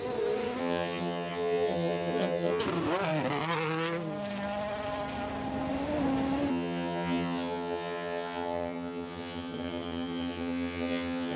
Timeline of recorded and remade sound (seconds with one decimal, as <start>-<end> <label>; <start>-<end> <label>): 0.0-0.6 recorded; 0.6-2.6 remade; 2.6-6.5 recorded; 6.5-11.4 remade